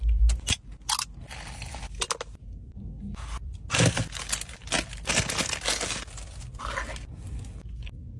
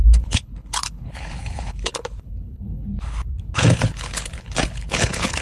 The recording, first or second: first